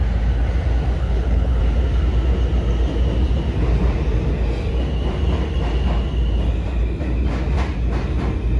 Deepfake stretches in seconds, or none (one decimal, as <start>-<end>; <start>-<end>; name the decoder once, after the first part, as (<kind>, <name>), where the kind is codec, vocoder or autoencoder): 1.0-1.6 (codec, HILCodec)